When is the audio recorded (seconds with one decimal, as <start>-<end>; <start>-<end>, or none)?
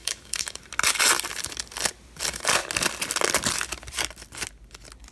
0.6-5.1